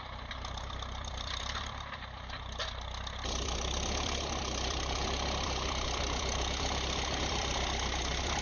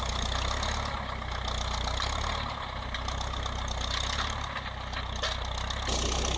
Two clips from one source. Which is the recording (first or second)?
second